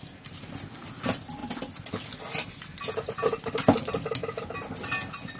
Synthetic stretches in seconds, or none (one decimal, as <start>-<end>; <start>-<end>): none